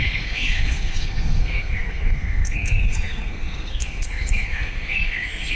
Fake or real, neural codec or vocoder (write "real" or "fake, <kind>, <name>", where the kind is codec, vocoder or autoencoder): fake, codec, SNAC